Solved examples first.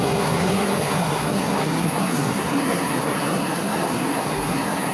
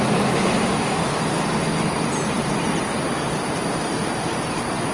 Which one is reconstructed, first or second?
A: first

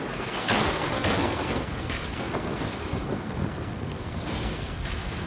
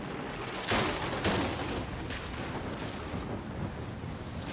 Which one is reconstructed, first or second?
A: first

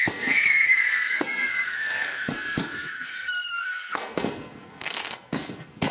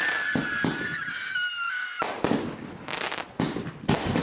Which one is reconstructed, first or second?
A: first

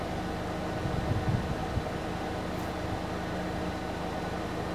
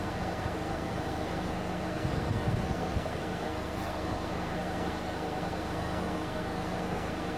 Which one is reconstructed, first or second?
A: second